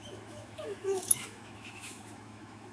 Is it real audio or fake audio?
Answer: fake